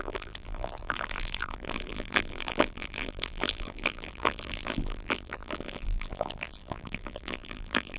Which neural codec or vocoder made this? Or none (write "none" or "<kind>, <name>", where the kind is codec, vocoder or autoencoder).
vocoder, BigVGAN v2